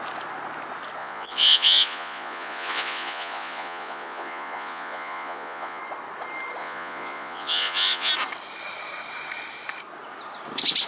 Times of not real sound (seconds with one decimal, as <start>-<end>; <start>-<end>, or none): 1.0-5.8; 6.6-8.1